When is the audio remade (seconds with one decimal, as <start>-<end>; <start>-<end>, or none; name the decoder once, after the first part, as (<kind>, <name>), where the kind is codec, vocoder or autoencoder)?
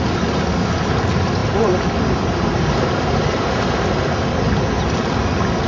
none